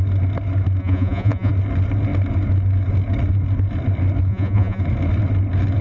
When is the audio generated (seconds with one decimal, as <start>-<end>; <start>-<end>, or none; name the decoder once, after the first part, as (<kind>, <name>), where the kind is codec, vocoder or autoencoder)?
0.8-1.5 (vocoder, Vocos); 4.3-4.8